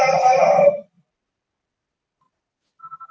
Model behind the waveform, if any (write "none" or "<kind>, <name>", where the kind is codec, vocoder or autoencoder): vocoder, BigVGAN v2